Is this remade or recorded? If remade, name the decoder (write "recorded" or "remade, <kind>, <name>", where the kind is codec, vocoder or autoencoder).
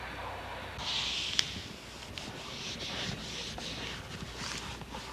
recorded